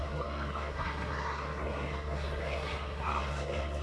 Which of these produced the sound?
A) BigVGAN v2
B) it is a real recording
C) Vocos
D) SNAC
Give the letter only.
D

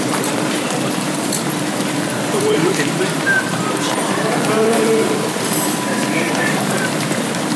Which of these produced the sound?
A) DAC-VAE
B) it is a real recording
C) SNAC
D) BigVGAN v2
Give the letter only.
D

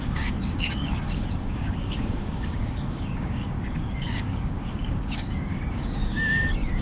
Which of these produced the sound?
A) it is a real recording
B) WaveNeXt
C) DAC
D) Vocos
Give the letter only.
C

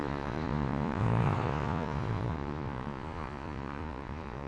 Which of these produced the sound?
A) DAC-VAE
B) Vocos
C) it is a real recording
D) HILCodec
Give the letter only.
B